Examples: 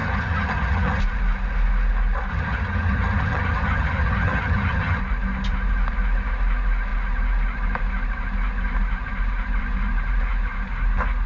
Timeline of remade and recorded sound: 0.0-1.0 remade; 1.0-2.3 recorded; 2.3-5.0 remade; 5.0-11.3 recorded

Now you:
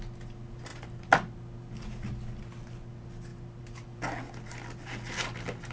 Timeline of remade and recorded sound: 0.0-5.7 recorded

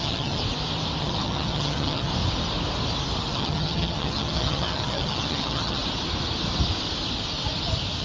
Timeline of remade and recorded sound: 0.0-0.4 remade; 0.4-1.0 recorded; 1.0-2.1 remade; 2.1-3.3 recorded; 3.3-5.8 remade; 5.8-8.0 recorded

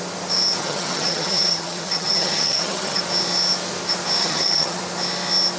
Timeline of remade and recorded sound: 0.0-0.6 recorded; 0.6-3.0 remade; 3.0-4.2 recorded; 4.2-4.8 remade; 4.8-5.6 recorded

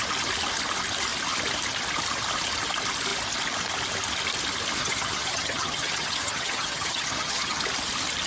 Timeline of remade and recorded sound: 0.0-4.8 recorded; 4.8-7.6 remade; 7.6-8.3 recorded